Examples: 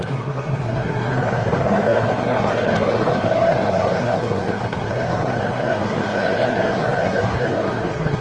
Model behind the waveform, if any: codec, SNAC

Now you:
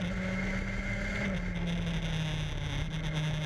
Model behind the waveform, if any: none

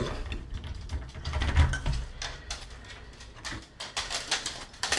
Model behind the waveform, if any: none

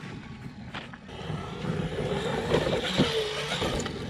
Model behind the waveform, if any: none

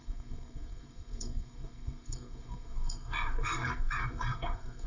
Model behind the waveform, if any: codec, SNAC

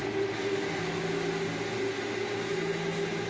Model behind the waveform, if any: none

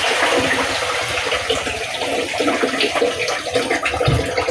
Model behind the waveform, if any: none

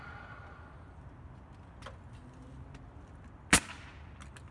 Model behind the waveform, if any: none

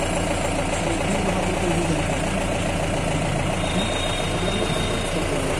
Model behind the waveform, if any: none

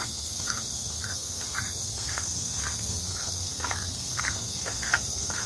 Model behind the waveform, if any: codec, SNAC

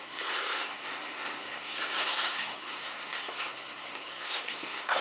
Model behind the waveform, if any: codec, SNAC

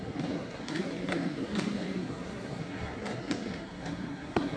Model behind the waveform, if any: codec, SNAC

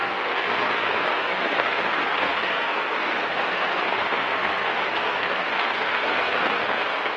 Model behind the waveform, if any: codec, SNAC